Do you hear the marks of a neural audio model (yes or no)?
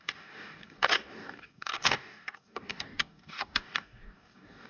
yes